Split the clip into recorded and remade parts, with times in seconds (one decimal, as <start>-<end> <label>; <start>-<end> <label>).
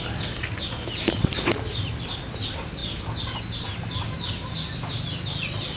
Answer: 0.0-5.8 recorded